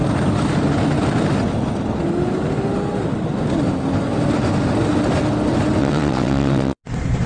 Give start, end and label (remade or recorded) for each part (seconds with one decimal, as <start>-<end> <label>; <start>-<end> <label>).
0.0-5.8 recorded; 5.8-6.8 remade; 6.8-7.3 recorded

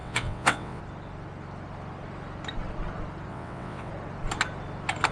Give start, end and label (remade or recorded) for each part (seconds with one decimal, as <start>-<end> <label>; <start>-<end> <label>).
0.0-0.8 remade; 0.8-3.3 recorded; 3.3-3.9 remade; 3.9-5.1 recorded

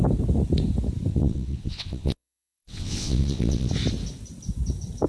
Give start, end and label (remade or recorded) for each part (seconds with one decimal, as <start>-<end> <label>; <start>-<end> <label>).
0.0-1.1 recorded; 1.1-3.7 remade; 3.7-5.1 recorded

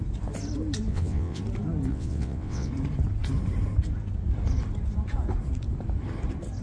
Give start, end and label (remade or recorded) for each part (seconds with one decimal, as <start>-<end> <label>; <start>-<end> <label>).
0.0-0.9 recorded; 0.9-1.4 remade; 1.4-1.9 recorded; 1.9-2.7 remade; 2.7-6.6 recorded

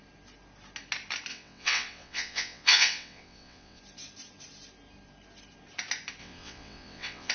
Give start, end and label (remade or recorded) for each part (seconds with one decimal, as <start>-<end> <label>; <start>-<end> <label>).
0.0-1.3 recorded; 1.3-3.8 remade; 3.8-6.2 recorded; 6.2-7.3 remade

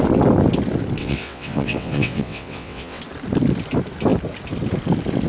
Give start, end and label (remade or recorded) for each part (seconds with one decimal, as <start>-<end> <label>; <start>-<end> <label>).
0.0-1.0 recorded; 1.0-3.0 remade; 3.0-5.3 recorded

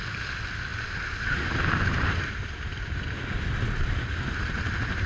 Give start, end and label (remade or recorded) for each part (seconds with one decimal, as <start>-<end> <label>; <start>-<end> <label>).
0.0-5.1 recorded